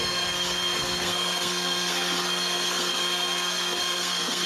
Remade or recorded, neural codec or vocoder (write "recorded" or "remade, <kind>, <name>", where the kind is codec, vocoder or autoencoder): remade, codec, SNAC